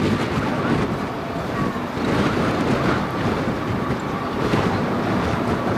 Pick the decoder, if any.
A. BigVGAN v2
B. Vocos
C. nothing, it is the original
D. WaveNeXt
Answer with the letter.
C